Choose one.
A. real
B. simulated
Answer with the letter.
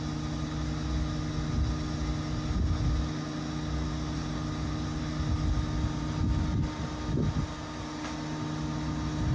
A